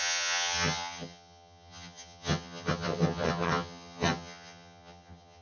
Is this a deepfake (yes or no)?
yes